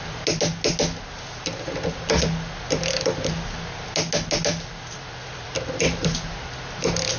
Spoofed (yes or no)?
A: no